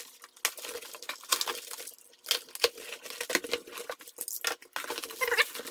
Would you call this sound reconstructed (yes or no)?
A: no